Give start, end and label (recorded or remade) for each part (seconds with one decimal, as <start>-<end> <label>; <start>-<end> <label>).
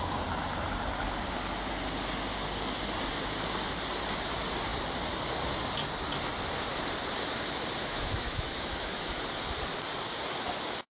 0.0-7.8 recorded; 7.8-9.2 remade; 9.2-10.9 recorded